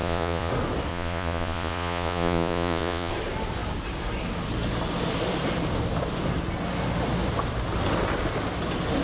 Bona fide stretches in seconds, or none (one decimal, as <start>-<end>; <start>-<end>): 0.5-0.9; 3.1-9.0